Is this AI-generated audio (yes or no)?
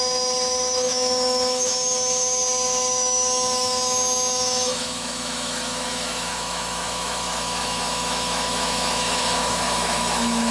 yes